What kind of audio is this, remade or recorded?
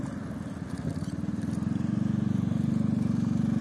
recorded